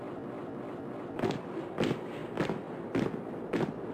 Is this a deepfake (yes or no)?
yes